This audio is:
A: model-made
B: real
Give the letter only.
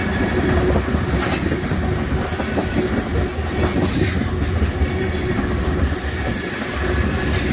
B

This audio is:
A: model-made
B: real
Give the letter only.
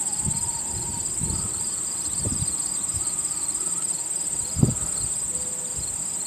B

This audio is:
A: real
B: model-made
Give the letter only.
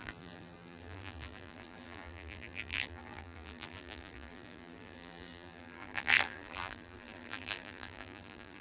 B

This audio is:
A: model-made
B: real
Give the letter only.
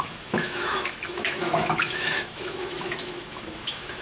A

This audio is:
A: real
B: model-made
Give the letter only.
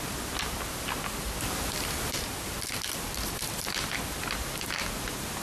A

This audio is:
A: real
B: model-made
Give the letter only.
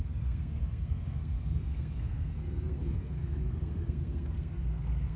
B